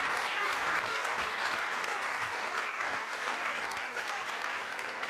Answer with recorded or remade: remade